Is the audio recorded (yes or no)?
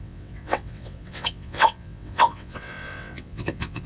no